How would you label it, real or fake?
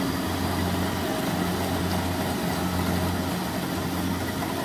real